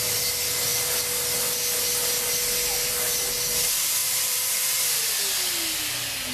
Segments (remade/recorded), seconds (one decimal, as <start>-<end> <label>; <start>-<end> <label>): 0.0-4.0 recorded; 4.0-4.8 remade; 4.8-6.3 recorded